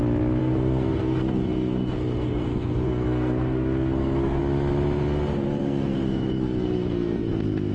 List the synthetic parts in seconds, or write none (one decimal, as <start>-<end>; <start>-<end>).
0.4-4.4; 5.6-7.3